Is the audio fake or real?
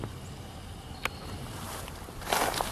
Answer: real